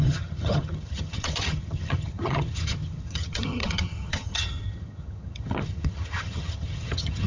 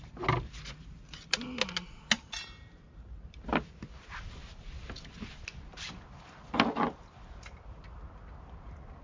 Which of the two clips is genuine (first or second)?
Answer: second